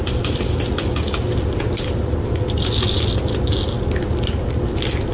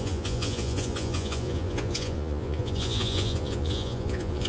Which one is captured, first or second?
first